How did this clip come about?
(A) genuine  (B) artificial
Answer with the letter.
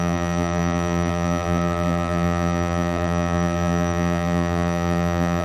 B